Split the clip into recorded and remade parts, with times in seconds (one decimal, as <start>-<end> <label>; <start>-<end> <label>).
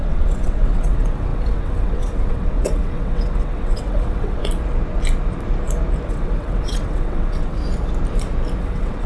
0.0-4.4 remade; 4.4-6.1 recorded; 6.1-7.6 remade; 7.6-8.6 recorded; 8.6-9.1 remade